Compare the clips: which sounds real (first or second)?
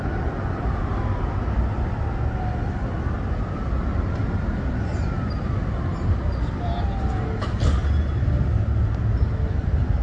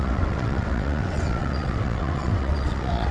first